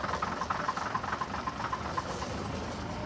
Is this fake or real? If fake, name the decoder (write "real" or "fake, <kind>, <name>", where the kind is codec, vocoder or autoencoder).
real